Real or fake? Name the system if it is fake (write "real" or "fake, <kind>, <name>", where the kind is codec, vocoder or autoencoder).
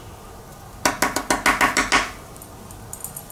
real